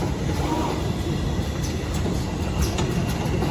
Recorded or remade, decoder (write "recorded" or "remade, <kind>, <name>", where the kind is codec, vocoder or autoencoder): recorded